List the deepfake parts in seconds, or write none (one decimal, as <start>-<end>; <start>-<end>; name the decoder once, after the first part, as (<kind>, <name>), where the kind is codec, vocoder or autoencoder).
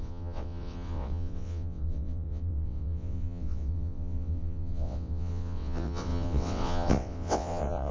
0.0-7.9 (vocoder, WaveNeXt)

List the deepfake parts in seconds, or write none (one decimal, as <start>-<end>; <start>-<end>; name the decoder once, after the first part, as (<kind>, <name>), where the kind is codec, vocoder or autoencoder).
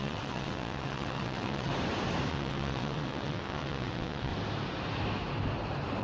0.0-1.7 (vocoder, WaveNeXt); 2.3-4.3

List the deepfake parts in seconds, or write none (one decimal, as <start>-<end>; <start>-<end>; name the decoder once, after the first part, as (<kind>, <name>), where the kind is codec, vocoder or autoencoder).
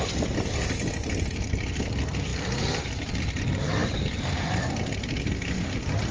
none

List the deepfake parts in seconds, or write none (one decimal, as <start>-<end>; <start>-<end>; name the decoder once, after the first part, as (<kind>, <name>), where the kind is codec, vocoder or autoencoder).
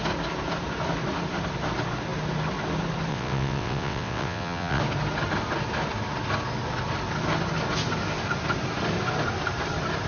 3.1-4.8 (vocoder, WaveNeXt)